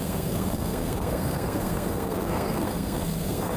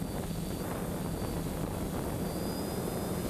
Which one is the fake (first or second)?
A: first